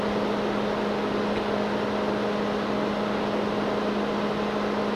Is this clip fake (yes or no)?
no